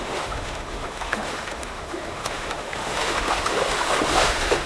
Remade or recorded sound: remade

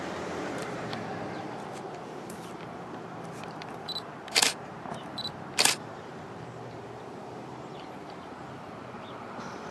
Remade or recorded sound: remade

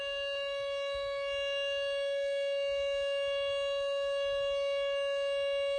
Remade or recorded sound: recorded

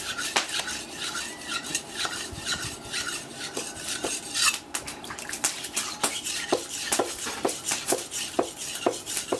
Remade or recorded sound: remade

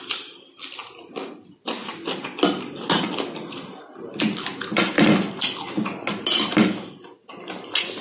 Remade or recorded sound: recorded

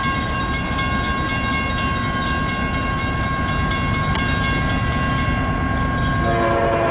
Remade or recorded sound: recorded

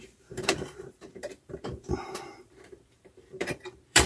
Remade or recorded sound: remade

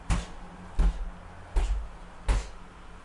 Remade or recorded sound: recorded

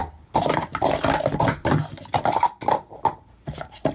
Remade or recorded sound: recorded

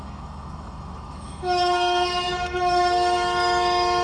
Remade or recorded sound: remade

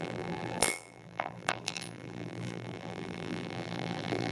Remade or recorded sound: remade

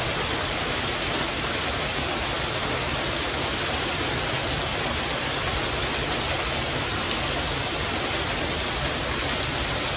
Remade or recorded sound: recorded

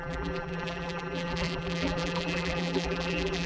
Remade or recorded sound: remade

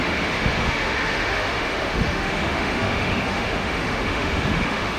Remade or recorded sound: remade